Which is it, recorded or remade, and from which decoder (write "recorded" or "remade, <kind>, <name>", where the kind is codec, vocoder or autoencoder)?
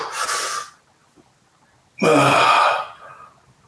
recorded